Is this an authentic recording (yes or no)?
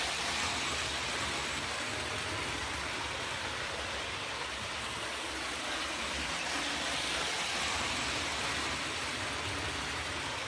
yes